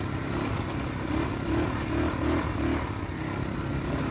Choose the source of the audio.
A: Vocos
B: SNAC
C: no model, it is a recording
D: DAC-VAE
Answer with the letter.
C